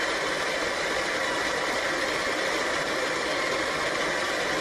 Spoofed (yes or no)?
no